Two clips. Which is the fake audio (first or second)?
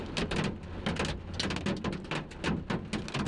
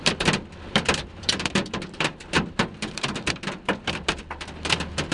second